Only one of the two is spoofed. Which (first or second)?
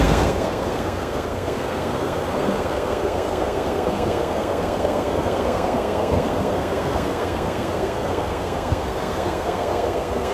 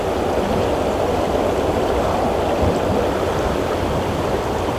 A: first